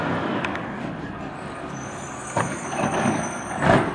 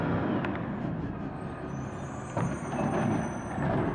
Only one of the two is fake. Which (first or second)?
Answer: first